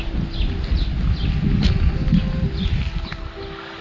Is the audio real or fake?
real